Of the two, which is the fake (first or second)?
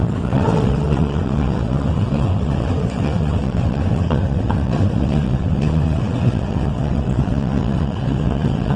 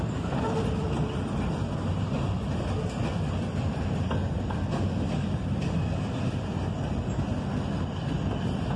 first